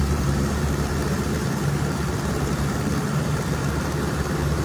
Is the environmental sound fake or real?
fake